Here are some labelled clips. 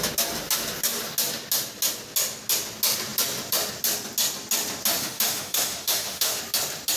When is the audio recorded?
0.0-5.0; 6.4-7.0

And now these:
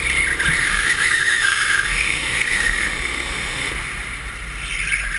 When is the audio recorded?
0.0-0.6; 3.7-5.2

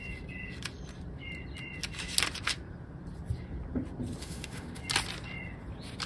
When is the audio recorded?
0.0-4.2; 4.8-6.1

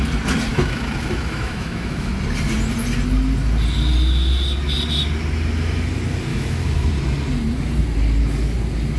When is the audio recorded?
0.0-0.5; 2.1-6.3; 6.9-9.0

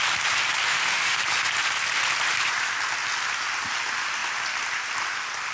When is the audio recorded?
0.0-0.7; 1.2-5.5

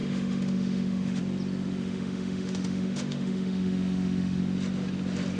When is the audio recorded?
1.2-1.8; 4.4-5.4

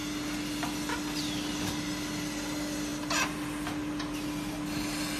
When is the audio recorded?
0.0-5.2

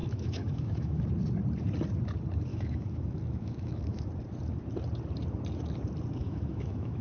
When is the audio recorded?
1.0-2.5; 4.1-6.2